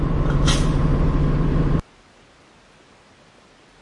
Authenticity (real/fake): real